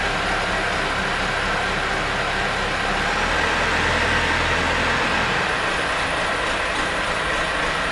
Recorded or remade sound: recorded